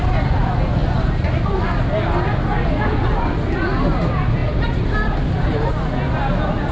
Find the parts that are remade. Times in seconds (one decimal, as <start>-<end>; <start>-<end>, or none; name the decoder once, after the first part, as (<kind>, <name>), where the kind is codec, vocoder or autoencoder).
2.9-3.7 (vocoder, BigVGAN v2); 4.4-5.7